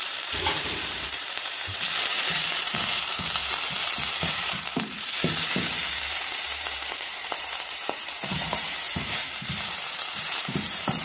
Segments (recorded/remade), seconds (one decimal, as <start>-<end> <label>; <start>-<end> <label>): 0.0-3.4 remade; 3.4-4.2 recorded; 4.2-11.0 remade